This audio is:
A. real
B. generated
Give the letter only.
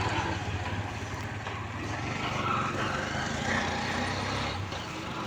A